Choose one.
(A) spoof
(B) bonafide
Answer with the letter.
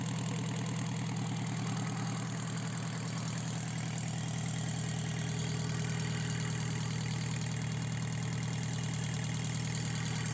B